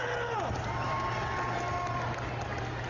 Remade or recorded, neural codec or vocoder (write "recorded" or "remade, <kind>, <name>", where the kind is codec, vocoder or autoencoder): recorded